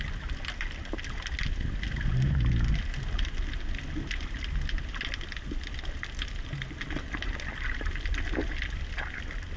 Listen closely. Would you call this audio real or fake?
real